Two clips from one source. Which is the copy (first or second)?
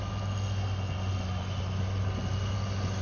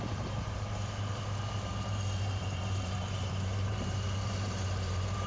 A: second